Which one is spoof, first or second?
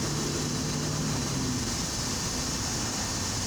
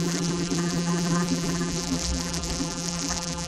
second